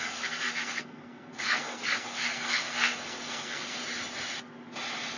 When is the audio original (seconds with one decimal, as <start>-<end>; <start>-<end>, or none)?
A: 3.8-5.2